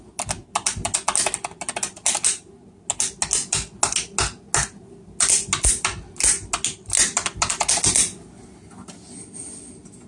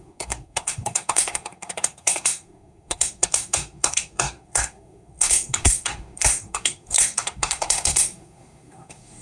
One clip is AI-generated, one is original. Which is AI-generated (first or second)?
second